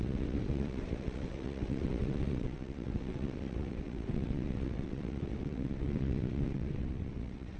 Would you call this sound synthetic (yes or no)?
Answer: yes